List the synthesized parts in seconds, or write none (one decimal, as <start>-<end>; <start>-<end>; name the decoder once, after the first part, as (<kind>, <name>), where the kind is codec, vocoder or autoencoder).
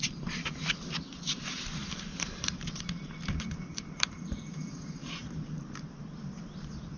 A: 1.8-6.0 (vocoder, BigVGAN v2)